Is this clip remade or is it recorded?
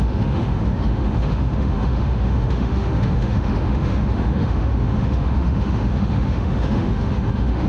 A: remade